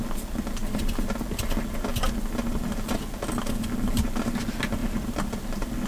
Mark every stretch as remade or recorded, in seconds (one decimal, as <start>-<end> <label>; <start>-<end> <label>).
0.0-4.8 recorded; 4.8-5.4 remade; 5.4-5.9 recorded